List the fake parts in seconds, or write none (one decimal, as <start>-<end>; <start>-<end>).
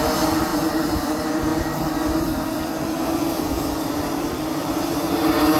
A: 0.5-1.1; 1.5-4.9